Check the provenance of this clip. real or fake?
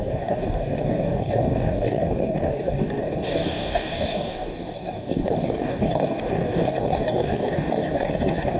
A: fake